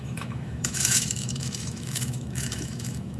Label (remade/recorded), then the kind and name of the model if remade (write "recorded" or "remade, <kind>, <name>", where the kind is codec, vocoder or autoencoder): remade, autoencoder, DAC-VAE